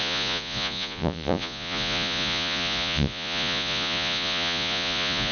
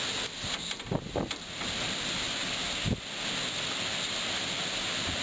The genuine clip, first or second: second